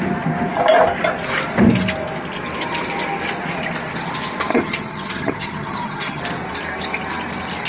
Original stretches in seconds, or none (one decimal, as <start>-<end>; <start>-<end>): 0.0-4.5; 6.2-7.7